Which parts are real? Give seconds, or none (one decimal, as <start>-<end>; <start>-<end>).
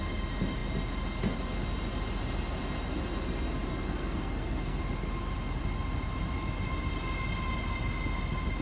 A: 0.0-3.7; 4.8-8.6